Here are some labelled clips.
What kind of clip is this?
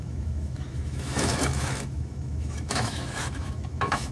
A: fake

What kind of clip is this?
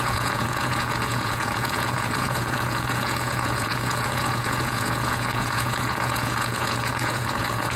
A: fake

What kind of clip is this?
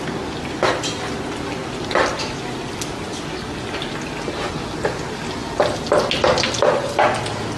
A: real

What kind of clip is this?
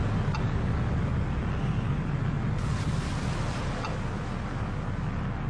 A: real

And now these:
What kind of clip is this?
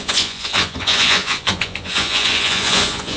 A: fake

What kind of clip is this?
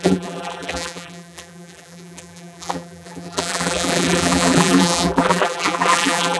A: fake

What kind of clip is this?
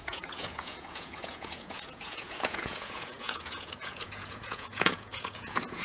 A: fake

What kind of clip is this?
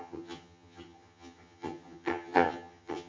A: fake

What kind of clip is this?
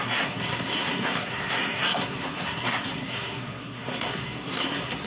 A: fake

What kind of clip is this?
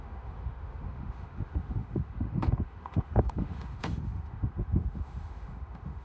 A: fake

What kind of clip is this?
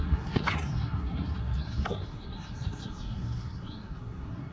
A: fake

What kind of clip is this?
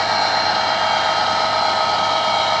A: real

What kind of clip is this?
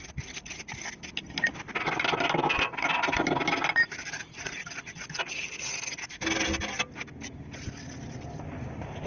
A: real